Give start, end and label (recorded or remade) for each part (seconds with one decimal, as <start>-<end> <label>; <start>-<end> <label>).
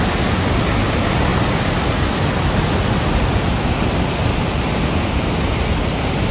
0.0-6.3 recorded